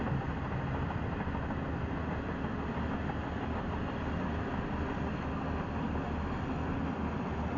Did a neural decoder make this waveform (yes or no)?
no